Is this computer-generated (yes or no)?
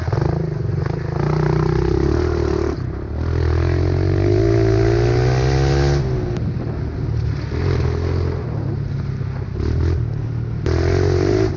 no